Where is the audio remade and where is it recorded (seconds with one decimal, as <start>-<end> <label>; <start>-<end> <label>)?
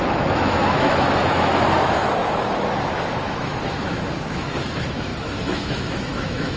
0.0-6.6 remade